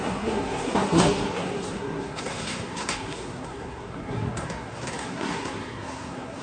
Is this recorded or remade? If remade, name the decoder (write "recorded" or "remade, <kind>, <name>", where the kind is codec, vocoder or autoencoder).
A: remade, codec, SNAC